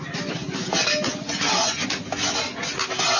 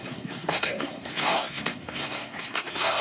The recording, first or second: first